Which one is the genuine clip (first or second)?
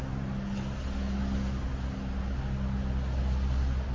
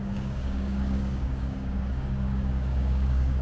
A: first